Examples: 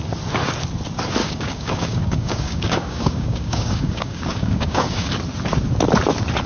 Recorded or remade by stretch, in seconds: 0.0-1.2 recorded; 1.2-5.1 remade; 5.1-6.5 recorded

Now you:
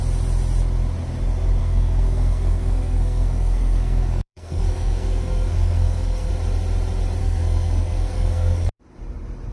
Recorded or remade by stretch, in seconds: 0.0-1.6 recorded; 1.6-6.3 remade; 6.3-7.2 recorded; 7.2-8.7 remade; 8.7-9.5 recorded

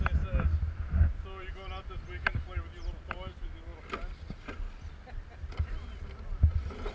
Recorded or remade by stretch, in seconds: 0.0-6.9 recorded

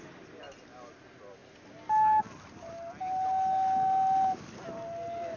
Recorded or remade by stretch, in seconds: 0.0-5.4 recorded

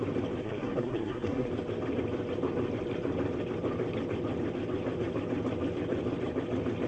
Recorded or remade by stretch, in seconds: 0.0-0.4 recorded; 0.4-1.5 remade; 1.5-6.9 recorded

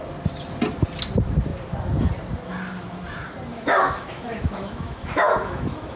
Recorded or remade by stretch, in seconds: 0.0-3.5 recorded; 3.5-6.0 remade

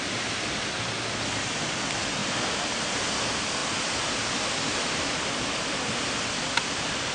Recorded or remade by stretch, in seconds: 0.0-2.2 recorded; 2.2-2.8 remade; 2.8-3.6 recorded; 3.6-7.1 remade